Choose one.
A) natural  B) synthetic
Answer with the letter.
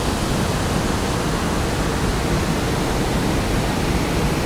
A